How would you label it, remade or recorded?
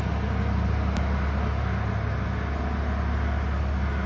recorded